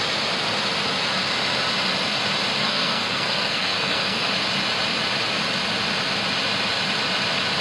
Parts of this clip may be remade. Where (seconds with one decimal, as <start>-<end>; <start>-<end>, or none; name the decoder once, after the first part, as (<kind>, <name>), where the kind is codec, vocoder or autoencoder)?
2.6-4.3 (codec, SNAC)